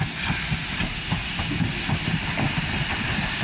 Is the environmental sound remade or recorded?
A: recorded